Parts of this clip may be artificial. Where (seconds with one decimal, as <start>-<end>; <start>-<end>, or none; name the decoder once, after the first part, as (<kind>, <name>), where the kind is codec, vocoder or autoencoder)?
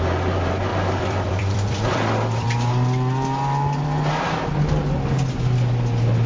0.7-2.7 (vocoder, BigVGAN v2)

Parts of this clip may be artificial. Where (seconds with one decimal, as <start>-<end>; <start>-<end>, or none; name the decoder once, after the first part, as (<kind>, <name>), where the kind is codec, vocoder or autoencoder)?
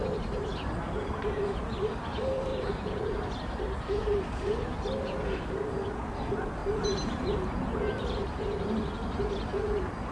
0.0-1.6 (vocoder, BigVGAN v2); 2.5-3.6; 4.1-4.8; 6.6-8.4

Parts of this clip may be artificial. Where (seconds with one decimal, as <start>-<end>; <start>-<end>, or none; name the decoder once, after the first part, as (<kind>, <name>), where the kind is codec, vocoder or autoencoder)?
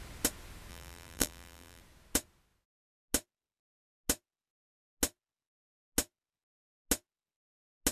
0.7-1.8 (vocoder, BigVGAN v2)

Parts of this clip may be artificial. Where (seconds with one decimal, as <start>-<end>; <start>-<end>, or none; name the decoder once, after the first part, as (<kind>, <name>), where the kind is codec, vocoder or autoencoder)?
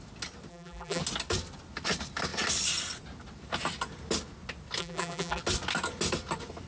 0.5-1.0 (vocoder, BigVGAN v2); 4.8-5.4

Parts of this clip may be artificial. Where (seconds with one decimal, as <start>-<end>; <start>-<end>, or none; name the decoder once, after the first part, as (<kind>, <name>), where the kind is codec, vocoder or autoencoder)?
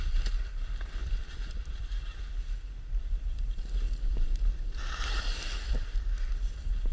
1.0-2.0 (vocoder, BigVGAN v2)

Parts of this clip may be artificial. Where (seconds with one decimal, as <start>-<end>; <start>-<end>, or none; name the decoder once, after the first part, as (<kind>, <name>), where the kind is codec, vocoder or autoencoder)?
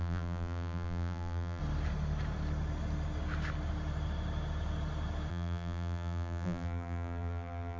0.0-1.6 (vocoder, BigVGAN v2); 5.3-7.8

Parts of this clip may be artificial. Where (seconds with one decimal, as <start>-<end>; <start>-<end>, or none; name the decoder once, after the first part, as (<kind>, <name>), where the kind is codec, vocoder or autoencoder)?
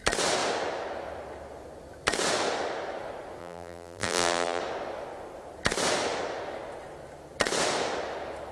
3.4-4.6 (vocoder, BigVGAN v2)